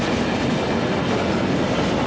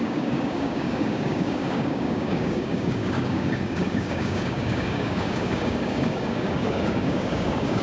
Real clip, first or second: first